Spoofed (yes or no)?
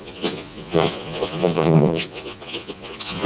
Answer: yes